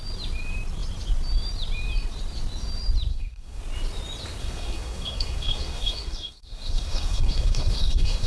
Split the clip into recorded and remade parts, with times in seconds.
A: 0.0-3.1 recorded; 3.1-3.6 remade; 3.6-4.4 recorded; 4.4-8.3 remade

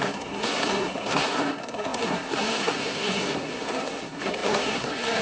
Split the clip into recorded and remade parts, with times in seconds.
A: 0.0-5.2 remade